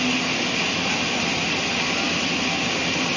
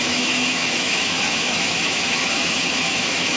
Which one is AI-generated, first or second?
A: second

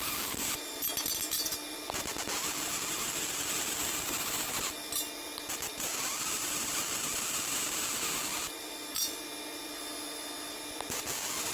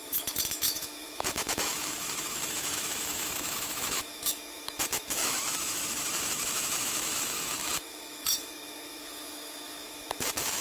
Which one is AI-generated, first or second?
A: second